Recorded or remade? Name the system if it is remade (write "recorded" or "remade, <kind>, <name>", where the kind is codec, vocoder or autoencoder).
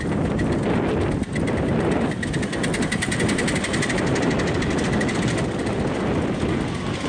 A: recorded